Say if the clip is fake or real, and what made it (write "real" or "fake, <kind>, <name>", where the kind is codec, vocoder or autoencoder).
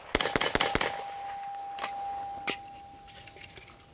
real